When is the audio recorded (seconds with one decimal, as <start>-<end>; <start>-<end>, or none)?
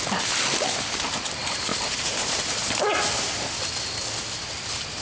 0.0-1.7; 2.7-5.0